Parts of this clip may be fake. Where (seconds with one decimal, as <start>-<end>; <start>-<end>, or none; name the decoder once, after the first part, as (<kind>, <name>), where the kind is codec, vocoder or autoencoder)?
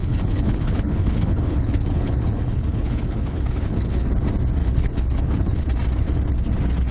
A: 0.0-4.1 (codec, HILCodec); 4.6-5.6